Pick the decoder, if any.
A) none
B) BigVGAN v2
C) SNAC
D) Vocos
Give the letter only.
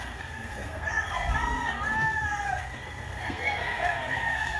C